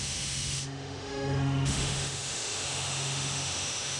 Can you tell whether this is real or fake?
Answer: fake